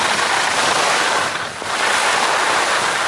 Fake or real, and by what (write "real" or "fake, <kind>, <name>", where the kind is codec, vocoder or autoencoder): real